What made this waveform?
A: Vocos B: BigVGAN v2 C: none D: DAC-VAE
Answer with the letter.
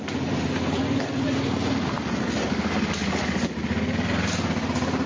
C